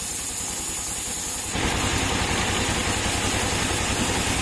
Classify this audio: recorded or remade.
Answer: recorded